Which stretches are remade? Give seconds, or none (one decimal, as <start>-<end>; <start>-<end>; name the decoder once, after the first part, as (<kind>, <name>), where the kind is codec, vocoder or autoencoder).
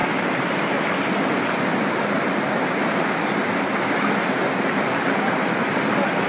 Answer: none